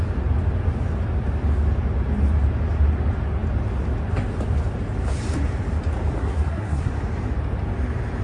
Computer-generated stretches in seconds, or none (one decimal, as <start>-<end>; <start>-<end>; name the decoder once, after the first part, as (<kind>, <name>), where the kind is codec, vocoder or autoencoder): 6.2-6.9 (codec, SNAC)